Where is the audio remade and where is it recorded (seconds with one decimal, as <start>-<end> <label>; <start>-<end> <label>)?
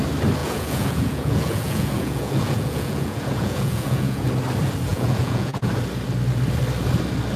0.0-0.4 recorded; 0.4-4.3 remade; 4.3-4.9 recorded; 4.9-5.7 remade; 5.7-7.4 recorded